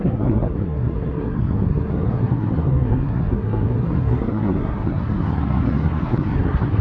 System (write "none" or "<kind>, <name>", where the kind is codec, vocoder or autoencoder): codec, SNAC